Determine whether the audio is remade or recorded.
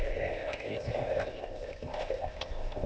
remade